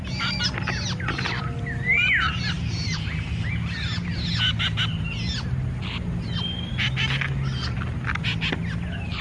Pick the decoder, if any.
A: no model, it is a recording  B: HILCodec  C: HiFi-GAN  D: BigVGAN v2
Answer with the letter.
A